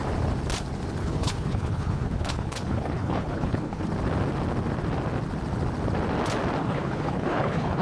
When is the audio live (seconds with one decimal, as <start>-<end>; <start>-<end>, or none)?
0.0-1.0; 3.8-6.6